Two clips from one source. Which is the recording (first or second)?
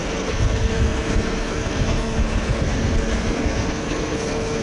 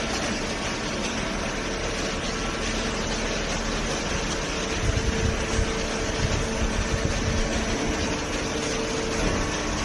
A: second